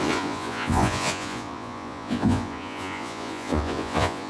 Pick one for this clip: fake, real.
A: fake